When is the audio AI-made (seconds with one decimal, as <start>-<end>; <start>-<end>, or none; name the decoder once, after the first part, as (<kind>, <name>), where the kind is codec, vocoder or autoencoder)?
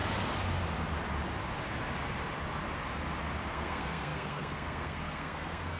3.5-5.8 (codec, SNAC)